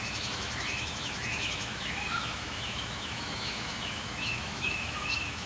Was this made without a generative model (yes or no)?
no